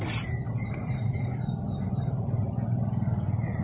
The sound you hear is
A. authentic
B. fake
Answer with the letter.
A